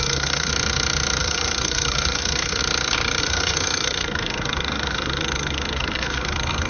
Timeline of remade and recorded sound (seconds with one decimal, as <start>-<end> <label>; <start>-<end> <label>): 0.0-0.5 remade; 0.5-1.2 recorded; 1.2-2.6 remade; 2.6-3.2 recorded; 3.2-6.7 remade

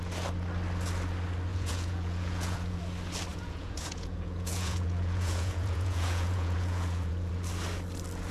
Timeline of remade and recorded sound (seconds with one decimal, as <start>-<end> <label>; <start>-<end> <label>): 0.0-1.5 recorded; 1.5-2.8 remade; 2.8-3.3 recorded; 3.3-7.3 remade; 7.3-8.3 recorded

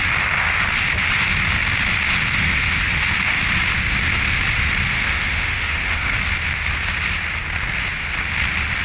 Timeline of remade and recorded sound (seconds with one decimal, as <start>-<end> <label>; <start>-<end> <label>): 0.0-4.9 recorded; 4.9-6.1 remade; 6.1-8.8 recorded